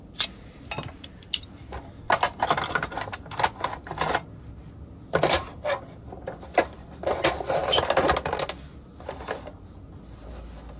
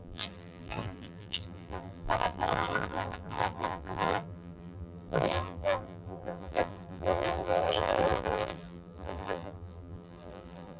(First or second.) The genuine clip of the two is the first